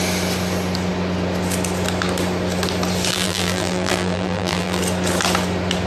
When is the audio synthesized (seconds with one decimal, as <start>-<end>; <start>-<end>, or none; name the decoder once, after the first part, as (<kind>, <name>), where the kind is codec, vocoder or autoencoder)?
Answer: 3.1-4.8 (vocoder, BigVGAN v2)